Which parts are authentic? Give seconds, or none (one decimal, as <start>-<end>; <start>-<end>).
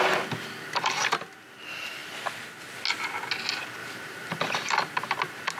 0.0-3.8; 4.4-5.6